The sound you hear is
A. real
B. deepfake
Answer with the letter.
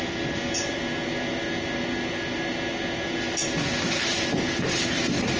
A